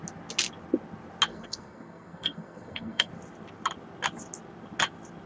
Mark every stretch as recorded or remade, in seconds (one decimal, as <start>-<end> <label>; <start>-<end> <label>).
0.0-1.3 recorded; 1.3-3.1 remade; 3.1-5.3 recorded